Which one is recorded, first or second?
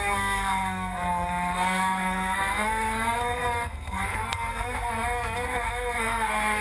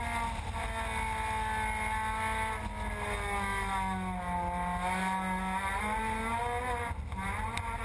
second